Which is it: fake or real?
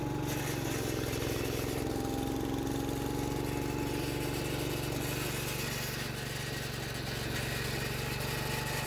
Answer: real